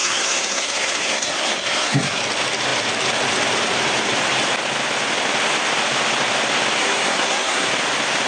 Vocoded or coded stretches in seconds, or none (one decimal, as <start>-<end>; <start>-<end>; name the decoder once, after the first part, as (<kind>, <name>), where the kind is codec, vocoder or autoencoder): 0.0-2.2 (codec, SNAC); 6.8-7.7